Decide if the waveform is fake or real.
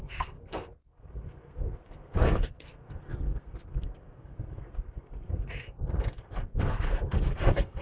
fake